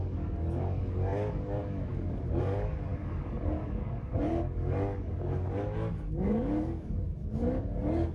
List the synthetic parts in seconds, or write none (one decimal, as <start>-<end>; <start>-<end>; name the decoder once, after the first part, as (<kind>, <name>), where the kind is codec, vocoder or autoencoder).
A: 0.0-8.1 (codec, DAC)